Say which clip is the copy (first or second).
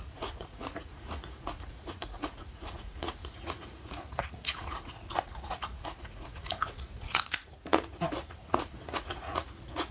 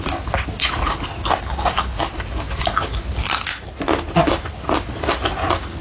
first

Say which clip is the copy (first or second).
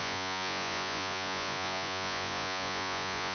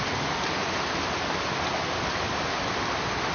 first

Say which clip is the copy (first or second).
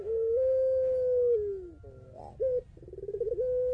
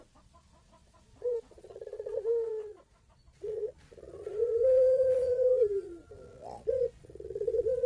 second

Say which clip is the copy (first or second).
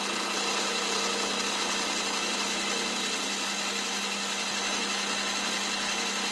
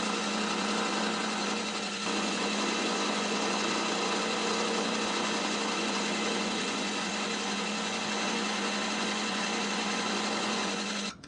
second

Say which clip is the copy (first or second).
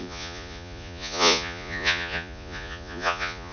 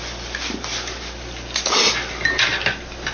first